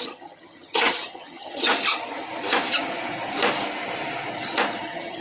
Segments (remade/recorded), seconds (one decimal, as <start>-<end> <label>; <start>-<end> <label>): 0.0-1.7 remade; 1.7-4.8 recorded; 4.8-5.2 remade